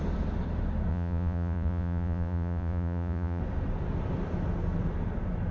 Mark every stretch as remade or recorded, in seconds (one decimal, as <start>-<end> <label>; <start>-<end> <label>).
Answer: 0.0-0.9 recorded; 0.9-3.4 remade; 3.4-5.5 recorded